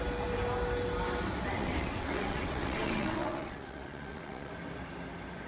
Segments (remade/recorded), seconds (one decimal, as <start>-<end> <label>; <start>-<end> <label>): 0.0-1.4 recorded; 1.4-4.5 remade; 4.5-5.5 recorded